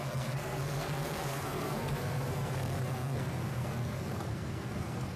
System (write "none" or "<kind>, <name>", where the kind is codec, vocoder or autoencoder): codec, SNAC